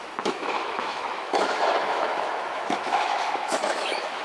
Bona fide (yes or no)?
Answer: no